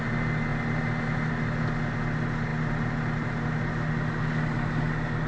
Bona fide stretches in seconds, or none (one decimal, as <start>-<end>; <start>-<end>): 0.0-5.3